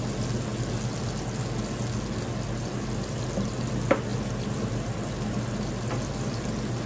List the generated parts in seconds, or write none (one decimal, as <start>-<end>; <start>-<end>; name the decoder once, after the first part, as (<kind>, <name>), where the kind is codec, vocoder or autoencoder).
none